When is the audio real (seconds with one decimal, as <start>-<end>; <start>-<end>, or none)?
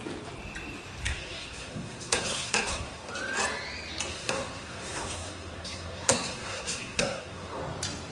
0.0-1.0; 3.1-4.1; 7.6-8.1